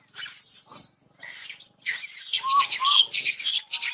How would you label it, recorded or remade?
recorded